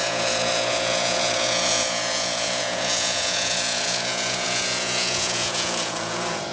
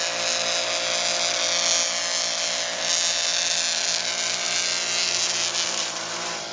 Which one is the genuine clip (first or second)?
second